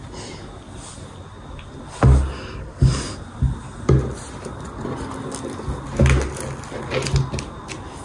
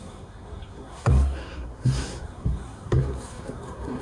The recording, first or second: first